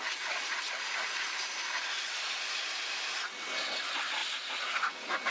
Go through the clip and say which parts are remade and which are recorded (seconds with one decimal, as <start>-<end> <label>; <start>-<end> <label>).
0.0-5.3 recorded